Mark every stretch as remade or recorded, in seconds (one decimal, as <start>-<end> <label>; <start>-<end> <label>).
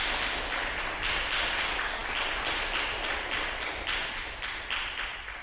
0.0-5.4 recorded